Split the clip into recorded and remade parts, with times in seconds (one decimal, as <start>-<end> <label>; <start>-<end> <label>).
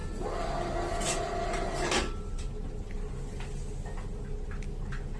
0.0-5.2 recorded